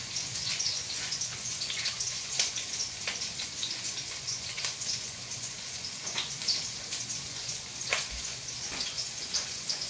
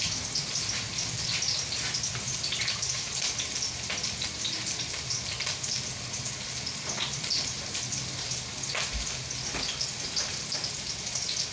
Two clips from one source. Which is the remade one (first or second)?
first